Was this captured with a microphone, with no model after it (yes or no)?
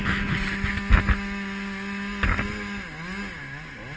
yes